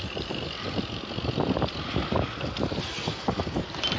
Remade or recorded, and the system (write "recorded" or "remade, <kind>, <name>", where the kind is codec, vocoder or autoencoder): recorded